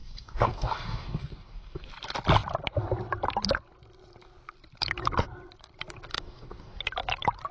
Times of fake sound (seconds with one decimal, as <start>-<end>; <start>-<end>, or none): 0.0-1.9; 6.1-6.8